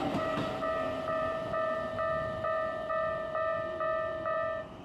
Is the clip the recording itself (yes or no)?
no